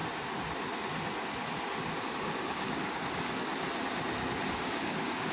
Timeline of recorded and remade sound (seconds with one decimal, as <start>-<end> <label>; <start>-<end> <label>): 0.0-2.2 recorded; 2.2-3.5 remade; 3.5-4.6 recorded; 4.6-5.3 remade